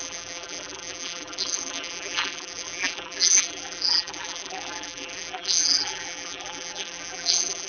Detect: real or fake fake